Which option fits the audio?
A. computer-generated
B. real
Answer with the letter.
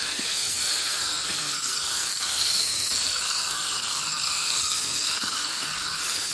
A